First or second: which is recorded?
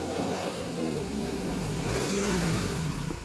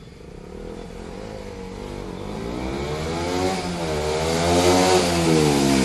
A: second